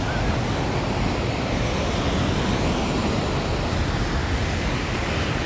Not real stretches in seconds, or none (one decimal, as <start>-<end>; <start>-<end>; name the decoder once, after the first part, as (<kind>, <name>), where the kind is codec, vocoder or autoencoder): 4.2-5.1 (codec, DAC)